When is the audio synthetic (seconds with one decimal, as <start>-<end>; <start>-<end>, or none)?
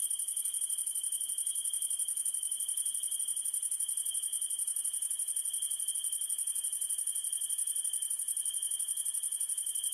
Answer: none